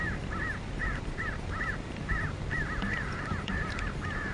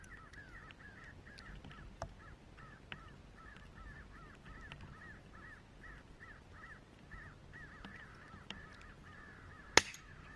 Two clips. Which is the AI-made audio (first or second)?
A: first